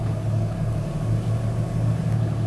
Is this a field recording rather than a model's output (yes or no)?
no